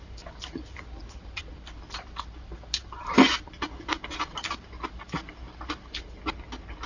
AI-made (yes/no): no